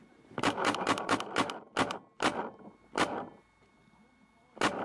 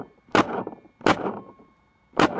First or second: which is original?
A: first